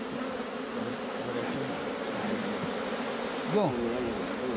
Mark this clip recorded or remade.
recorded